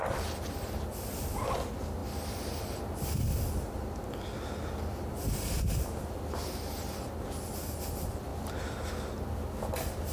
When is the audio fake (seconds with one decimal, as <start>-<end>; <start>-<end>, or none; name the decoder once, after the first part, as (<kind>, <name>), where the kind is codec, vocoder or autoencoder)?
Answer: none